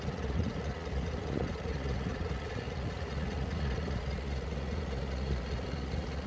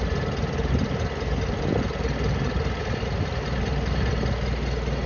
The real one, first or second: second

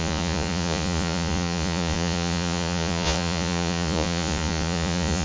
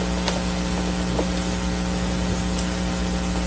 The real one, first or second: second